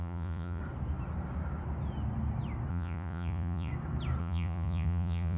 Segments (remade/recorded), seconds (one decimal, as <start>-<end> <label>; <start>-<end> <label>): 0.0-0.6 remade; 0.6-2.7 recorded; 2.7-3.7 remade; 3.7-4.2 recorded; 4.2-5.4 remade